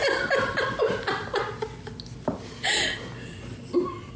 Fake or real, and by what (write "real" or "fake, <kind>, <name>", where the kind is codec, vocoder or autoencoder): real